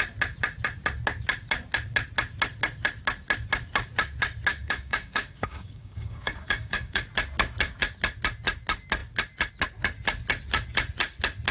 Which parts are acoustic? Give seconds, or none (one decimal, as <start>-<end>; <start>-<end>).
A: 0.0-4.5; 7.0-11.5